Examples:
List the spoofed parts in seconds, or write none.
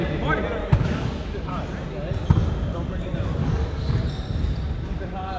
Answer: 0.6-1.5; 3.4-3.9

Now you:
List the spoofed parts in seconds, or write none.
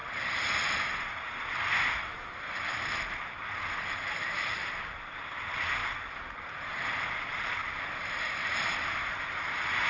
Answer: none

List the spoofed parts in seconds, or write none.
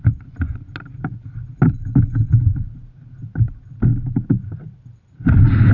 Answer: none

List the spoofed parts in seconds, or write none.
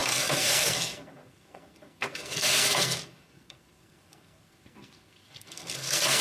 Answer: 0.0-6.2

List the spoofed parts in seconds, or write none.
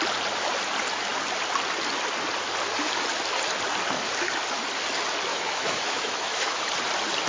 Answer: 5.3-6.6